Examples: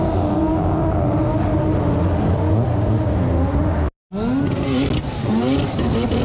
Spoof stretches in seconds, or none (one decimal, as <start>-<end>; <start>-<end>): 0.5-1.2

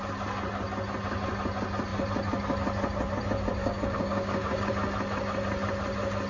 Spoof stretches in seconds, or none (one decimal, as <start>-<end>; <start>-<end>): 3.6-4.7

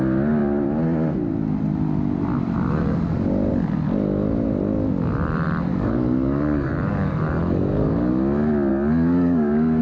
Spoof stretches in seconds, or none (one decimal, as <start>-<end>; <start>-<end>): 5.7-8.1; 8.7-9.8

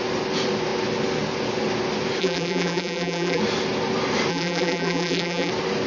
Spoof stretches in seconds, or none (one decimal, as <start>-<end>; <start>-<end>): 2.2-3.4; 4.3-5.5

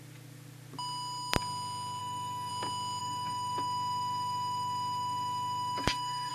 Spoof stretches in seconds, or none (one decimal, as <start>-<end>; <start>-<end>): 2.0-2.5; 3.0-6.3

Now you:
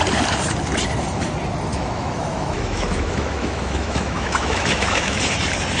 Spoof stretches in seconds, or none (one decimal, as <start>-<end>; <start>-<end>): 1.7-5.2

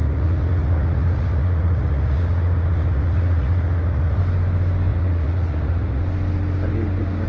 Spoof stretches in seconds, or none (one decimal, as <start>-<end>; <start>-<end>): 0.0-4.2; 4.9-6.0

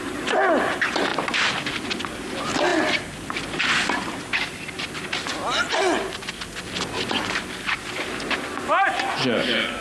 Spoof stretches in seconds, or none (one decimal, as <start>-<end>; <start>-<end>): none